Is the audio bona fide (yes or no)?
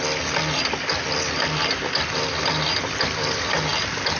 yes